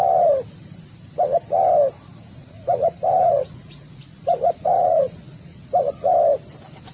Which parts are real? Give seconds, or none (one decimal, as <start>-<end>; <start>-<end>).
0.0-2.4; 6.1-6.9

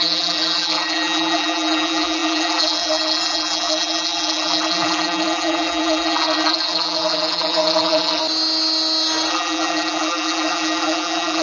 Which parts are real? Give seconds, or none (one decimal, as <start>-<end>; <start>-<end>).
8.2-9.3

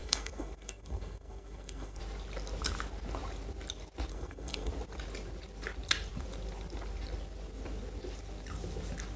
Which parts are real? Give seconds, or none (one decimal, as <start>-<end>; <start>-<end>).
2.0-4.1; 4.7-9.2

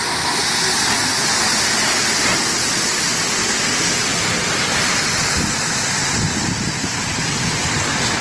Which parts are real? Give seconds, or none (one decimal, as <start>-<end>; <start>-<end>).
0.0-8.2

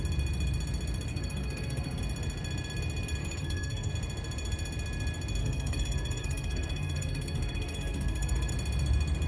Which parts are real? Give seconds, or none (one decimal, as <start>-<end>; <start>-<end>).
0.0-1.1; 2.0-3.2; 3.9-5.4; 8.5-9.3